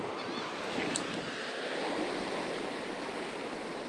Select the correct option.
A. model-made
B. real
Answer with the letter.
B